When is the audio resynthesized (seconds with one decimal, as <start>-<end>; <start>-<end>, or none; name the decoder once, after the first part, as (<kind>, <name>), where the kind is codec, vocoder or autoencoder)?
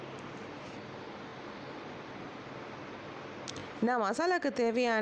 none